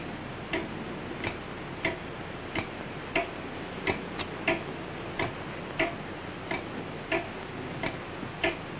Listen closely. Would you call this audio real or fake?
real